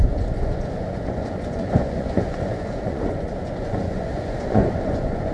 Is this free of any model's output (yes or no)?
no